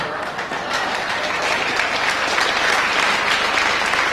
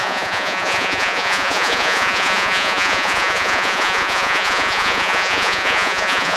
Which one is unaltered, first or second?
first